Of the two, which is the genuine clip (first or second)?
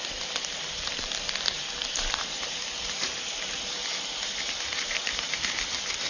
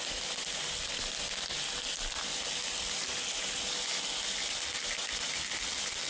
second